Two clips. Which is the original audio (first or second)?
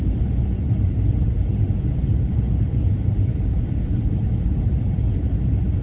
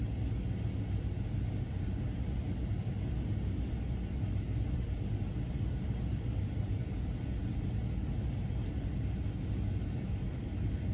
second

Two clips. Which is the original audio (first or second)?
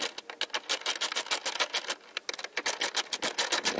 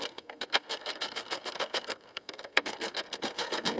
first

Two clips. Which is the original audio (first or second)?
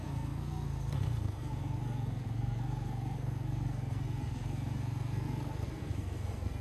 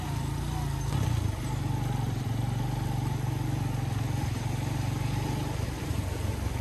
second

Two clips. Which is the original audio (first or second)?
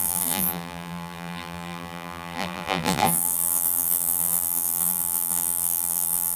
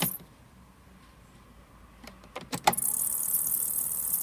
second